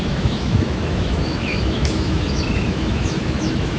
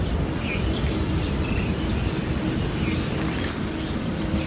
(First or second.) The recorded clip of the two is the second